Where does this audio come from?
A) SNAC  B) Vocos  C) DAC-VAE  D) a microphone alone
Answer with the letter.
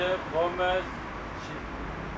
D